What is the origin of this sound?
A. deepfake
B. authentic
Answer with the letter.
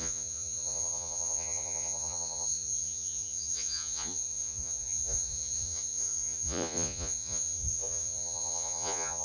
A